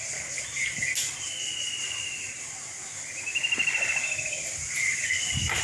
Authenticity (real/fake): real